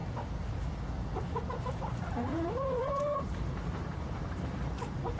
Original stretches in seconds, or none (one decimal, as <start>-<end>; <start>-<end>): 0.0-1.7